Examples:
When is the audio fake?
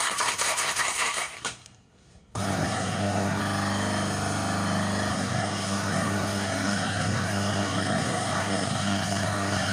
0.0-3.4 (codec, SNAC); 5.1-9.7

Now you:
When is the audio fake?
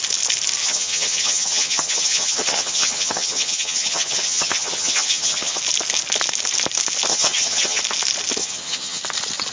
0.6-5.6 (vocoder, HiFi-GAN); 7.1-7.8; 8.4-9.0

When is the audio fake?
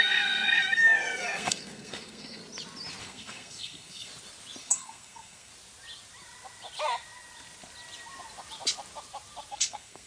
0.0-2.4 (codec, SNAC); 3.0-4.1; 4.6-5.5; 9.5-10.1